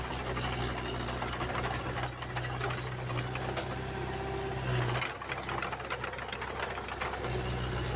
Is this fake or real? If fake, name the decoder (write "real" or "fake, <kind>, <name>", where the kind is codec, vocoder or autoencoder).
real